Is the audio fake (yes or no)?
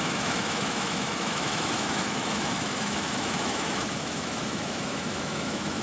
yes